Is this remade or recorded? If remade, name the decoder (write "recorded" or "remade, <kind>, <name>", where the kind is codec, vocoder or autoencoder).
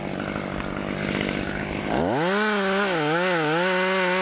recorded